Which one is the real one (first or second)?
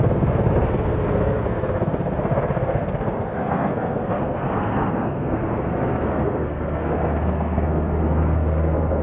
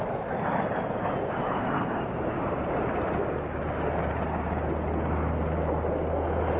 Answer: second